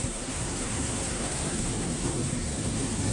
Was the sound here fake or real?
fake